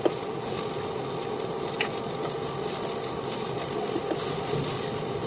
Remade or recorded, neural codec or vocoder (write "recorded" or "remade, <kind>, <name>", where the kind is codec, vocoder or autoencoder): recorded